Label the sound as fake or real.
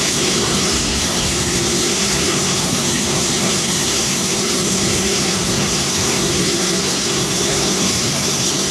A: fake